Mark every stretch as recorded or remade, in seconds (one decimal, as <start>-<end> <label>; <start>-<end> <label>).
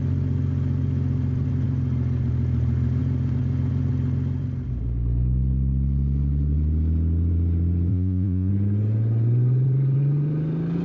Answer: 0.0-7.9 recorded; 7.9-8.5 remade; 8.5-10.8 recorded